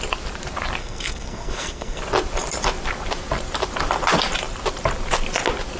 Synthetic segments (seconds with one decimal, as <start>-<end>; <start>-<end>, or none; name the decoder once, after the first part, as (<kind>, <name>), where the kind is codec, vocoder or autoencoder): 0.8-2.0 (codec, SNAC)